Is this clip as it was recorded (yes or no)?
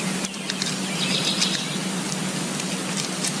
yes